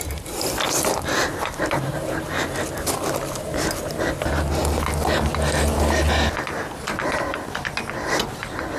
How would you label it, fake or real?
real